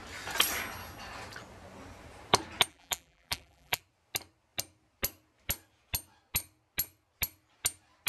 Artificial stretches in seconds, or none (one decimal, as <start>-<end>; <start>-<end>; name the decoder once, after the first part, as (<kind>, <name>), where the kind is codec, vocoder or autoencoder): 2.7-3.8 (vocoder, BigVGAN v2)